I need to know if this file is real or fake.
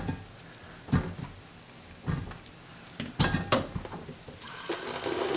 real